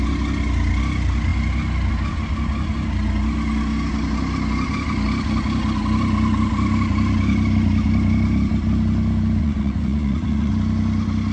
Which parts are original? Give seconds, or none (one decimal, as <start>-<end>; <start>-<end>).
0.0-9.4; 10.5-11.3